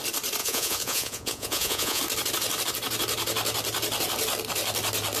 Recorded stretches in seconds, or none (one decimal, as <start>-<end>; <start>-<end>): 0.0-0.4; 2.0-5.2

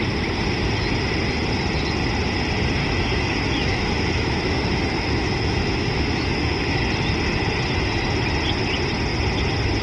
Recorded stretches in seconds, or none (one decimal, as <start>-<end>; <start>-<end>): 0.0-2.8; 6.8-9.8

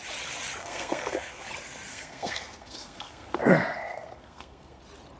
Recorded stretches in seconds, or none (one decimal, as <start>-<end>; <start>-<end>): 0.0-0.6; 1.5-1.9; 4.8-5.2

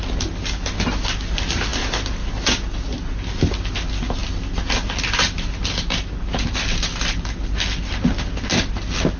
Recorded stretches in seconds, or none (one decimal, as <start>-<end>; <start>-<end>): 0.0-9.2

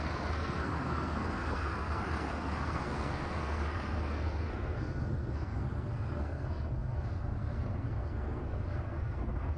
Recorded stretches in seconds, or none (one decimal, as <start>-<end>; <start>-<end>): none